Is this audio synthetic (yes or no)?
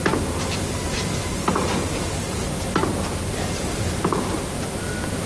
no